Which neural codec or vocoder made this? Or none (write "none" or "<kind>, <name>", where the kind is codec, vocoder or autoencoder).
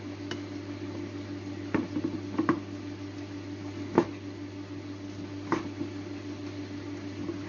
none